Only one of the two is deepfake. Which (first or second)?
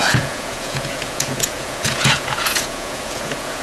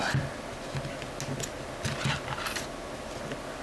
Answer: first